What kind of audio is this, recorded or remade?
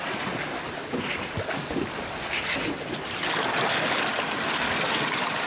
recorded